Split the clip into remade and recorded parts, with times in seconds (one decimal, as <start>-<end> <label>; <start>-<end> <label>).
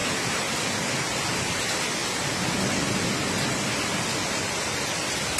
0.0-5.4 recorded